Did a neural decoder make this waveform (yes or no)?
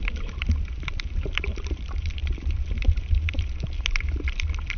yes